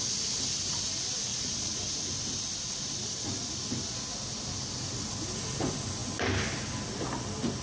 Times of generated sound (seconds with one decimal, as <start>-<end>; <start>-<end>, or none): 1.3-1.8